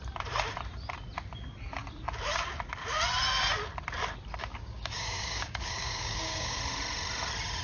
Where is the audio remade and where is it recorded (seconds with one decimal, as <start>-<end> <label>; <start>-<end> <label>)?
0.0-4.4 recorded; 4.4-6.6 remade; 6.6-7.6 recorded